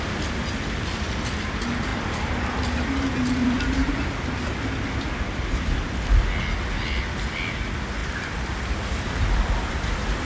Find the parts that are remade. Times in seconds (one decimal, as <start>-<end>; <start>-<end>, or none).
1.9-2.4; 3.4-3.9